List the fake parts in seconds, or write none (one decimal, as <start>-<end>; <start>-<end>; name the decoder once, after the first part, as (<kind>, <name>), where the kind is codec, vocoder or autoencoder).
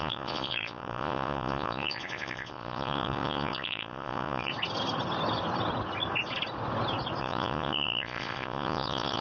0.0-4.5 (vocoder, Vocos); 7.2-9.2